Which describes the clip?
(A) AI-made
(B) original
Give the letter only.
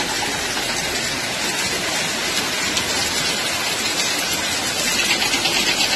B